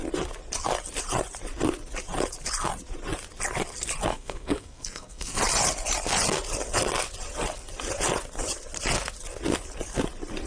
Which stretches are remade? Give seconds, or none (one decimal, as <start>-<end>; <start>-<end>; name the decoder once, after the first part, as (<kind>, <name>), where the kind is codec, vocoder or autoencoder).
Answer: 4.1-5.4 (codec, SNAC)